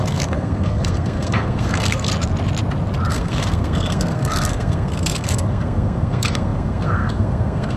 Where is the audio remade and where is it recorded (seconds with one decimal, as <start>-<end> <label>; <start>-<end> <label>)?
0.0-2.1 remade; 2.1-3.1 recorded; 3.1-7.8 remade

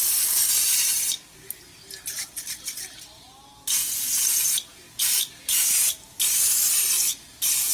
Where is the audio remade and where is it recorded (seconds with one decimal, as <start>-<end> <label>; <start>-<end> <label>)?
0.0-5.5 recorded; 5.5-6.4 remade; 6.4-7.7 recorded

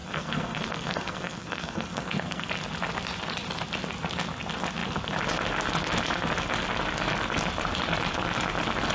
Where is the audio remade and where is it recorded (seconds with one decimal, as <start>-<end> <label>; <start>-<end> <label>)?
0.0-2.5 remade; 2.5-8.9 recorded

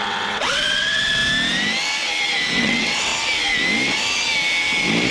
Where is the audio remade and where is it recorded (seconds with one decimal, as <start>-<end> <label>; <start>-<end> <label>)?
0.0-1.2 remade; 1.2-2.6 recorded; 2.6-3.1 remade; 3.1-5.1 recorded

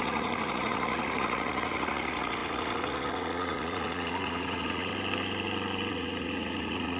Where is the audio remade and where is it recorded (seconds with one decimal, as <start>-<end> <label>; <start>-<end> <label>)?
0.0-4.9 remade; 4.9-5.9 recorded; 5.9-7.0 remade

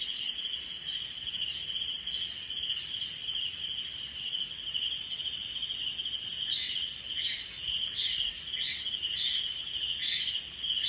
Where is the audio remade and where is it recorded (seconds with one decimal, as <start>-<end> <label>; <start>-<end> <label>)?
0.0-10.9 recorded